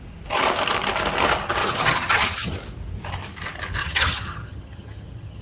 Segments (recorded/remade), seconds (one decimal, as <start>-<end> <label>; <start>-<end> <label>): 0.0-1.6 recorded; 1.6-2.5 remade; 2.5-3.8 recorded; 3.8-5.4 remade